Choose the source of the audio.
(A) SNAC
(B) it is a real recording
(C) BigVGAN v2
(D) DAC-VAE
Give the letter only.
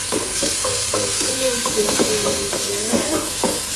A